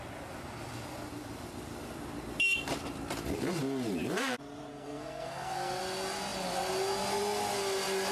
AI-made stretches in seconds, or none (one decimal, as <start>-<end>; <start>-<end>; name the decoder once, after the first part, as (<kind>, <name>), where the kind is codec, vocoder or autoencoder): 4.7-5.8 (codec, SNAC)